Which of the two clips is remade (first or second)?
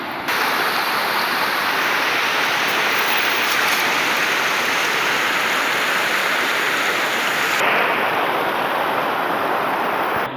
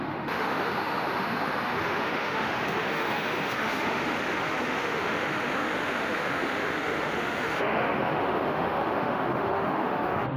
second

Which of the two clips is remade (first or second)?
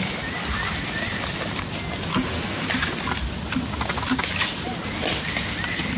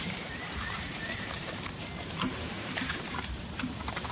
second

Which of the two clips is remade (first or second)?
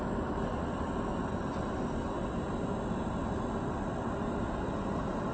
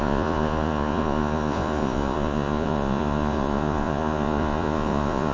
second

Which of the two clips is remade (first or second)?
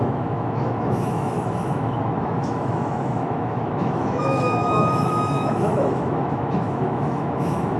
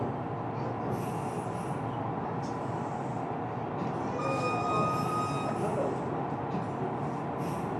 first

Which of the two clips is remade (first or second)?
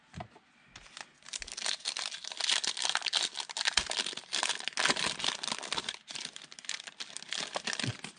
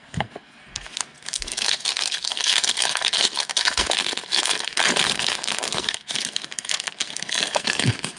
second